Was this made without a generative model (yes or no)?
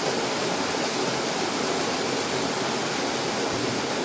yes